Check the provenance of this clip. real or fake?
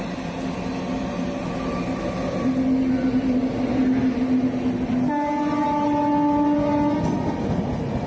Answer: real